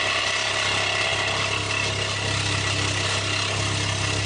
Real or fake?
real